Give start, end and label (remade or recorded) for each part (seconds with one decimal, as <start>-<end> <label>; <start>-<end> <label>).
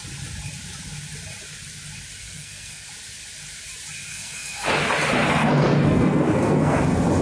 0.0-2.2 recorded; 2.2-2.9 remade; 2.9-4.1 recorded; 4.1-4.7 remade; 4.7-5.2 recorded; 5.2-6.8 remade; 6.8-7.2 recorded